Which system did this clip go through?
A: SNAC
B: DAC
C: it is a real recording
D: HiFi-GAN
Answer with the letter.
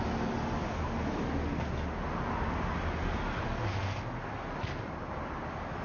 C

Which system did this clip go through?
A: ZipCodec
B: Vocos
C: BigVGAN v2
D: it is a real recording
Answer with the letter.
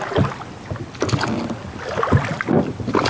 D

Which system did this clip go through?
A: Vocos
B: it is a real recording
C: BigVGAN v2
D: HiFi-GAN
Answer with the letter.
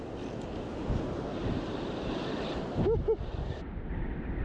B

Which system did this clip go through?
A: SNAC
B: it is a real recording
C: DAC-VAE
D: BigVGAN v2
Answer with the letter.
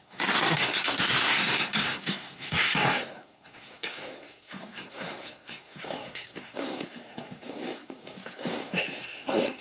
A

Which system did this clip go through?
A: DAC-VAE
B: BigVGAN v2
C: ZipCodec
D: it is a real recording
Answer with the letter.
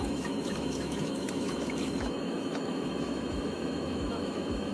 A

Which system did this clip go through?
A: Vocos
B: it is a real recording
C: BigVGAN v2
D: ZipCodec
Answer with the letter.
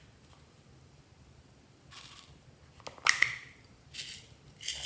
B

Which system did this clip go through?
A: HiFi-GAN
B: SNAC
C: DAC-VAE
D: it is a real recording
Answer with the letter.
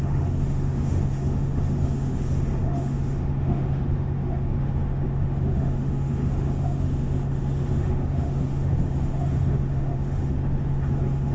C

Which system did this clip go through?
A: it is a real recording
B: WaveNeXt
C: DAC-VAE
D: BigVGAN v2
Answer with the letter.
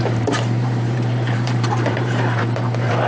D